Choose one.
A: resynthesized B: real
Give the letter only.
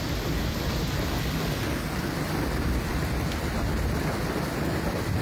B